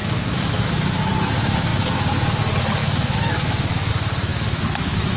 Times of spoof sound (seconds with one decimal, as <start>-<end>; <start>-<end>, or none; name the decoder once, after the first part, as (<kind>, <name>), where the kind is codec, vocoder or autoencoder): 0.0-0.7 (autoencoder, DAC-VAE); 2.8-3.9; 4.3-5.2